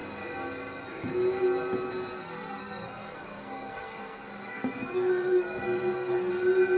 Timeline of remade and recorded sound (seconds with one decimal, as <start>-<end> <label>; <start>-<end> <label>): 0.0-2.2 recorded; 2.2-6.3 remade; 6.3-6.8 recorded

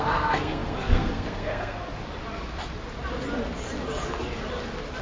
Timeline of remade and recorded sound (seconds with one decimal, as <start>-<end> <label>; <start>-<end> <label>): 0.0-1.8 remade; 1.8-5.0 recorded

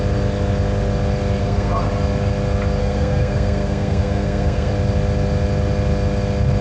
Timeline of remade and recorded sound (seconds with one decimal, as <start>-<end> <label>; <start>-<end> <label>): 0.0-1.4 recorded; 1.4-1.9 remade; 1.9-2.8 recorded; 2.8-4.7 remade; 4.7-6.6 recorded

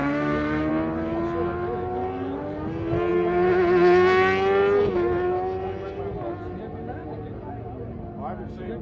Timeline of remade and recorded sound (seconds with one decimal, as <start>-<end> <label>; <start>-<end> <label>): 0.0-0.7 remade; 0.7-8.8 recorded

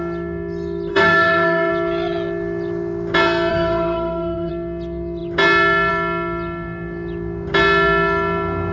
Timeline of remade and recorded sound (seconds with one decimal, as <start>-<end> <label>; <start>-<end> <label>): 0.0-0.9 recorded; 0.9-1.7 remade; 1.7-3.5 recorded; 3.5-4.5 remade; 4.5-8.7 recorded

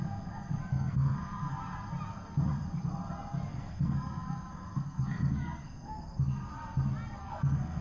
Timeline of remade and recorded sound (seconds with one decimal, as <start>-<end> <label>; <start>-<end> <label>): 0.0-1.5 remade; 1.5-3.5 recorded; 3.5-6.5 remade; 6.5-7.2 recorded; 7.2-7.8 remade

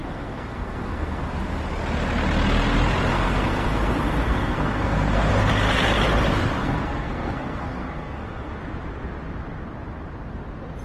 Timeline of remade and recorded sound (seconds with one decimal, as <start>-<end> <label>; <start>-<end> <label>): 0.0-1.2 remade; 1.2-3.1 recorded; 3.1-5.3 remade; 5.3-6.6 recorded; 6.6-8.5 remade; 8.5-10.8 recorded